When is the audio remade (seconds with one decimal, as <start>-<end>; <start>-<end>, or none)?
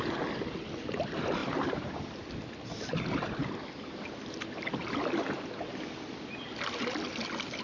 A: 1.4-2.1